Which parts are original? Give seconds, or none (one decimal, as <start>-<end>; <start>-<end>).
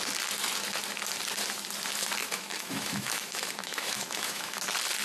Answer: 0.0-2.2; 4.6-5.0